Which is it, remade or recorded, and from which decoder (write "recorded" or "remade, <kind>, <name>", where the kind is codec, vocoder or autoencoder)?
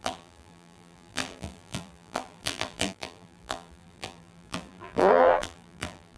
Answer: remade, vocoder, BigVGAN v2